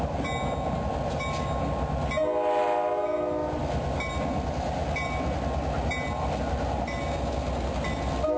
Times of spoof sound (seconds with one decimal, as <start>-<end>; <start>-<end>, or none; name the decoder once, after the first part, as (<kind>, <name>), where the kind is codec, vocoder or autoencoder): none